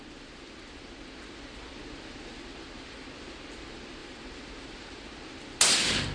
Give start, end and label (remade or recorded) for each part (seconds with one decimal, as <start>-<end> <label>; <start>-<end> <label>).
0.0-4.0 recorded; 4.0-5.0 remade; 5.0-6.1 recorded